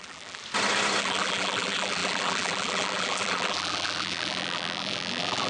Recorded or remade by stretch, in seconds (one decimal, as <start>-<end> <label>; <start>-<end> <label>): 0.0-0.4 remade; 0.4-1.0 recorded; 1.0-5.5 remade